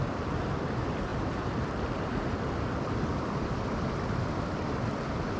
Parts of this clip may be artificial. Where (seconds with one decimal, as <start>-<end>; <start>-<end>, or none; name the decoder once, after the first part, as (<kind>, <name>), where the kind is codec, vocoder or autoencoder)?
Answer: none